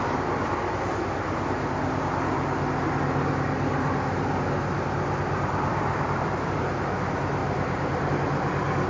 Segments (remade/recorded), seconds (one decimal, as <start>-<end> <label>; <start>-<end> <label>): 0.0-5.7 recorded; 5.7-6.6 remade; 6.6-7.4 recorded; 7.4-8.1 remade; 8.1-8.9 recorded